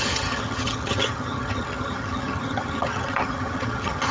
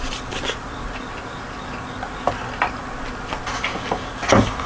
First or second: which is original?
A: second